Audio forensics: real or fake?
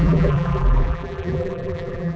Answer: fake